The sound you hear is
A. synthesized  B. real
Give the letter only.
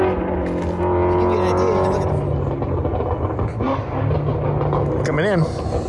B